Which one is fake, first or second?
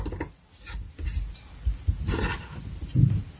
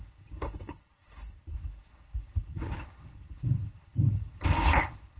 second